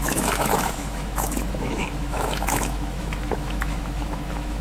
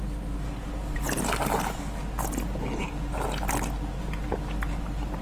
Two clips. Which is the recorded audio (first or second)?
second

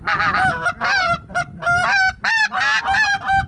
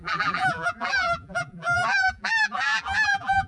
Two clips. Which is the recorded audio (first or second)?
first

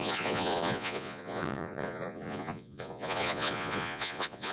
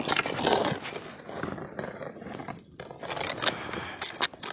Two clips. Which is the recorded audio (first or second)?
second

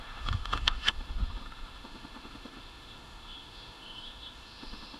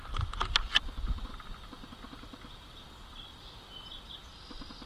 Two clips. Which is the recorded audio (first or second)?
second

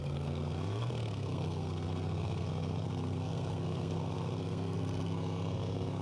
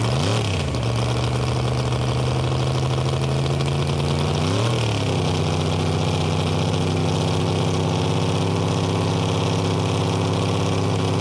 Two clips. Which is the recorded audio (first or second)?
second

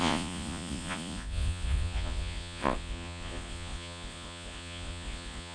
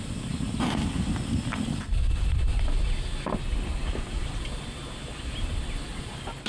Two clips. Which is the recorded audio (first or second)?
second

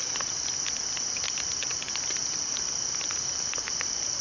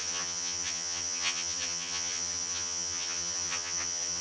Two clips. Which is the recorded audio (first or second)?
first